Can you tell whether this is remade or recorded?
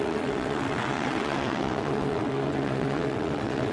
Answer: remade